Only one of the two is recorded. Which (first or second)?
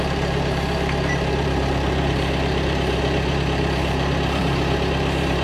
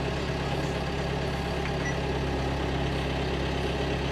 second